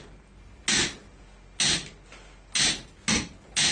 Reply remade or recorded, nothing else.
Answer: recorded